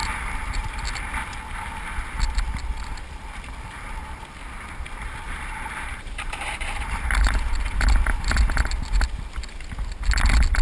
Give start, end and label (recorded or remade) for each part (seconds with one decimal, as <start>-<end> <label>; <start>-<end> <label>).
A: 0.0-5.9 recorded; 5.9-7.4 remade; 7.4-10.6 recorded